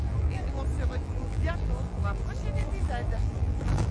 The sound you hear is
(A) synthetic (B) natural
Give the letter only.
A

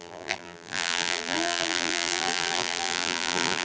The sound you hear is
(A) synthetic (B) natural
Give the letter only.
A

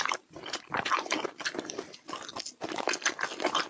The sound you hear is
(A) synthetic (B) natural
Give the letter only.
A